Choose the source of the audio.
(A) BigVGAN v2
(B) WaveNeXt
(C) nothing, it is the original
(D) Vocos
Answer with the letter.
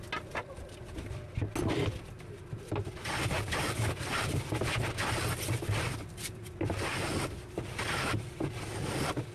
C